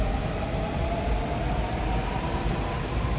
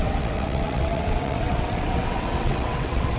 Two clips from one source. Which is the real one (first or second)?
first